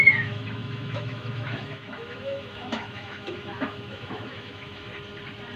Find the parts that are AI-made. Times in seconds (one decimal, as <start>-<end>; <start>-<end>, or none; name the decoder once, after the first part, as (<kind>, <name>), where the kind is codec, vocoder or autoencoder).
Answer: 0.0-4.9 (autoencoder, DAC-VAE)